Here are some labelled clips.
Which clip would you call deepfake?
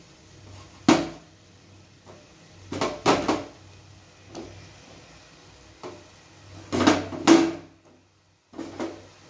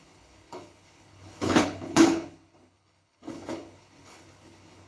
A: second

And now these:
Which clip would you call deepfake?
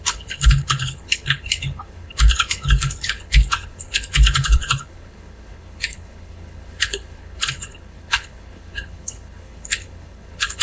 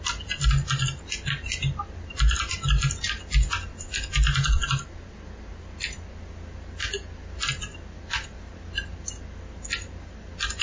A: first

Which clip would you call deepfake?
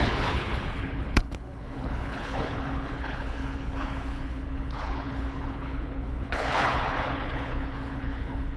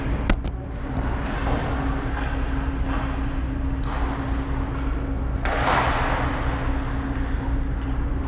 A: first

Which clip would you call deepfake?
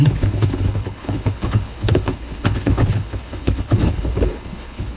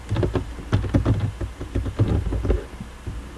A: first